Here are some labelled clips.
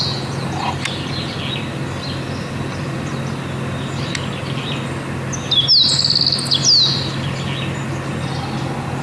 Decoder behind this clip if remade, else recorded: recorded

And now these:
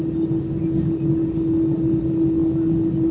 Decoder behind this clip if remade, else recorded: recorded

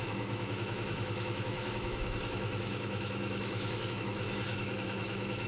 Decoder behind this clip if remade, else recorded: remade, autoencoder, DAC-VAE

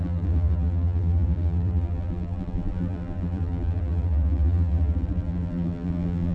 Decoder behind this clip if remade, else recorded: remade, vocoder, BigVGAN v2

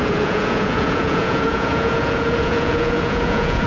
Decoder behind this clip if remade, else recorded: remade, vocoder, Vocos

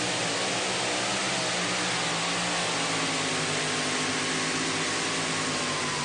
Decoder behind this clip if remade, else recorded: recorded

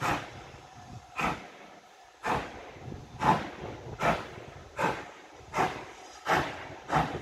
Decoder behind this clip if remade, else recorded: recorded